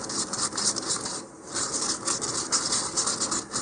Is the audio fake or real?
real